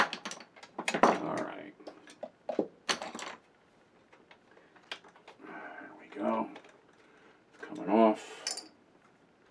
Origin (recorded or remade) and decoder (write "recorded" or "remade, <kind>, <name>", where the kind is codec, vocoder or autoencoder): recorded